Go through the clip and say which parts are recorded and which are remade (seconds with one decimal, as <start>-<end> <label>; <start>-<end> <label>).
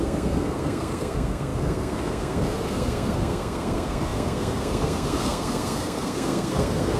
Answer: 0.0-7.0 remade